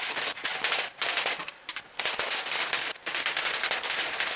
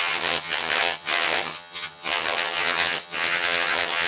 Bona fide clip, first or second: first